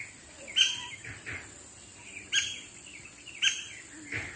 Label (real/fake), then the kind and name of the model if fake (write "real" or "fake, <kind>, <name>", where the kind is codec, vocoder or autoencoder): real